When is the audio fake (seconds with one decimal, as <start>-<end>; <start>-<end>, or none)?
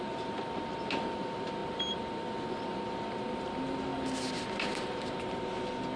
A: 3.9-4.5